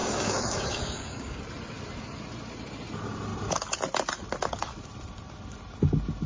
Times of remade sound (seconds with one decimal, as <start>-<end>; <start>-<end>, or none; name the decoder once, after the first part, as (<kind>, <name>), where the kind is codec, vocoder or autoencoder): 0.0-1.4 (codec, DAC)